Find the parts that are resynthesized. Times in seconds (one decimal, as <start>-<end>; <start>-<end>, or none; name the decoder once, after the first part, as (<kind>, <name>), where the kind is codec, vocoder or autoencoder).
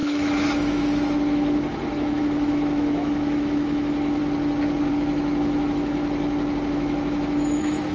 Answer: 0.0-4.2 (autoencoder, DAC-VAE); 4.9-6.0; 6.7-7.9